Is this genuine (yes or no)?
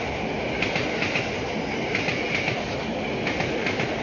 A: yes